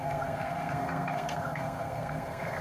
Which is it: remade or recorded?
remade